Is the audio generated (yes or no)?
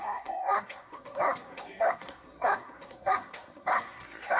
yes